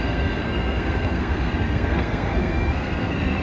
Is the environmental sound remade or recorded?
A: remade